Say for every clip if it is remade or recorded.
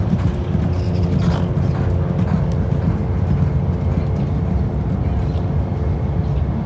recorded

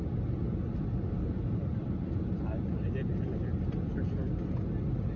remade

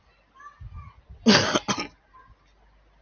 recorded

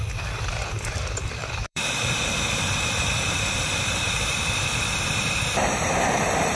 remade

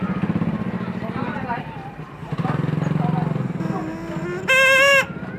recorded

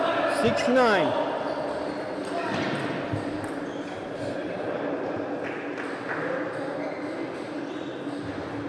recorded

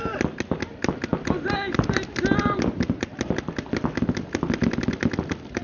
recorded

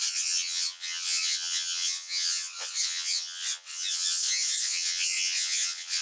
remade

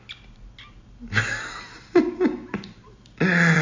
recorded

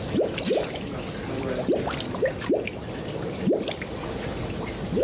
recorded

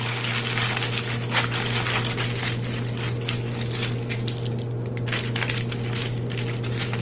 recorded